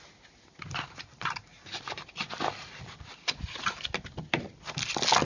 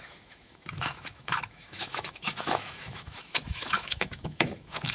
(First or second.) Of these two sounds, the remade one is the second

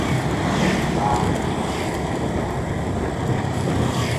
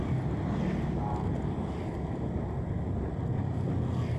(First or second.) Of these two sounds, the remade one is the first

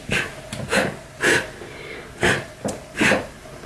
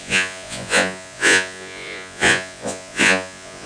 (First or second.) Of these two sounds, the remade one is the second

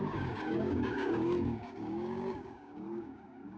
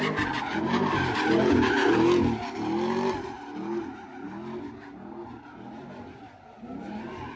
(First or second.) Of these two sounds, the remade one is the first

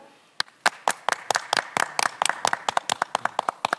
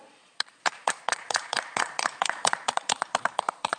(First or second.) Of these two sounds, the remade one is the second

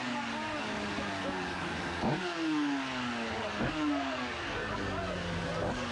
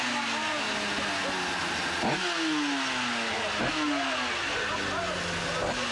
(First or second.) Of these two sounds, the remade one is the first